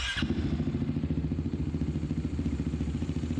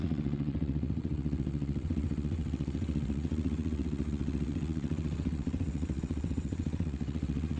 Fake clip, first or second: second